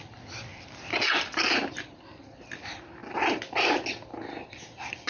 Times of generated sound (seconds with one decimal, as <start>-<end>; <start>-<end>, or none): none